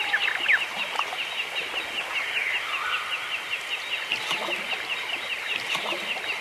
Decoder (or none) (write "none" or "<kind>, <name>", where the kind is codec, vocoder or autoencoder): none